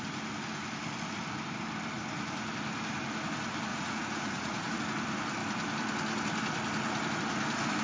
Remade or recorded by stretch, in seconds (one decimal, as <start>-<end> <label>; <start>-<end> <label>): 0.0-3.7 recorded; 3.7-4.8 remade; 4.8-7.8 recorded